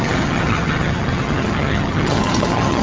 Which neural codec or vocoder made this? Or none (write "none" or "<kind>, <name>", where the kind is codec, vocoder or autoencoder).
vocoder, HiFi-GAN